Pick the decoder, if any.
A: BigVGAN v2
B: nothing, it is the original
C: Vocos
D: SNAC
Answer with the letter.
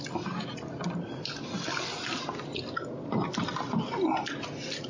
B